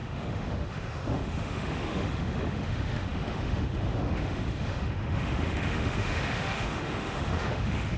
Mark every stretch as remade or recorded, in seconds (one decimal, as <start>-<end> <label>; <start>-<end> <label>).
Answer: 0.0-8.0 remade